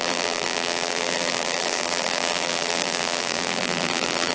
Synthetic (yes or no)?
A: yes